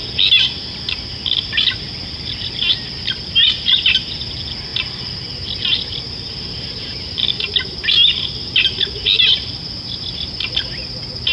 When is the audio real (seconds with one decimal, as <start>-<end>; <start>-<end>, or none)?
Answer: 0.0-11.3